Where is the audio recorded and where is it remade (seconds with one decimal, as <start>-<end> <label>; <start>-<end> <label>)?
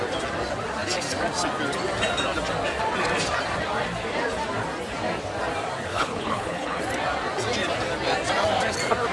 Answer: 0.0-5.9 recorded; 5.9-6.8 remade; 6.8-9.1 recorded